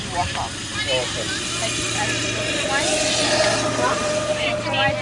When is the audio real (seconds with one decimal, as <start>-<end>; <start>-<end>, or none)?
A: 0.0-5.0